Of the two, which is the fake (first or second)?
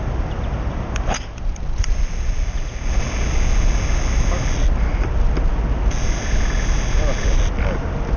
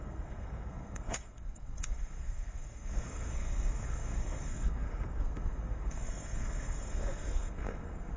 second